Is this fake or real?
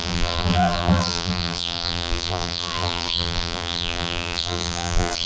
fake